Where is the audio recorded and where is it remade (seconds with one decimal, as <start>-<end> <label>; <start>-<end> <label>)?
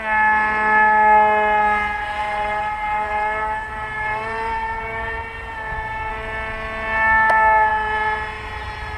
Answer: 0.0-2.2 recorded; 2.2-6.1 remade; 6.1-7.7 recorded; 7.7-9.0 remade